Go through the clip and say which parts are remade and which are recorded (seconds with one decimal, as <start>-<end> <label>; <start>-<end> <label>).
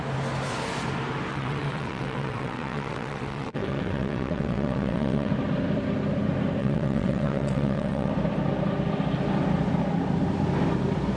0.0-1.3 recorded; 1.3-5.3 remade; 5.3-6.6 recorded; 6.6-8.1 remade; 8.1-11.2 recorded